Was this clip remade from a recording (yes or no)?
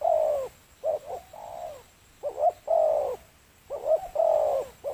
no